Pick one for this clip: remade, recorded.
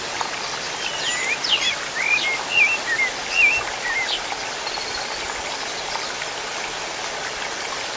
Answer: recorded